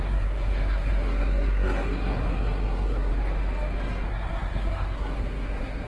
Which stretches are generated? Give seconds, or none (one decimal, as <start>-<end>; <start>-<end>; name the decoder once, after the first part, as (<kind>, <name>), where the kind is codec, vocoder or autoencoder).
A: 0.0-3.1 (codec, SNAC); 4.1-5.9